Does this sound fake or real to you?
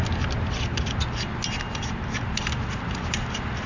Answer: real